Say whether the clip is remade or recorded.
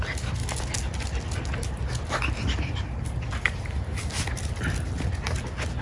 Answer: recorded